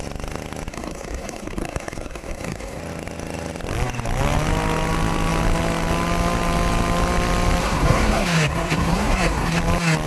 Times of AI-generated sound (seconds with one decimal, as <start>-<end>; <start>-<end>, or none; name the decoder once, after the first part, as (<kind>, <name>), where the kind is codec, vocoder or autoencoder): 0.7-2.8 (codec, SNAC); 7.6-9.6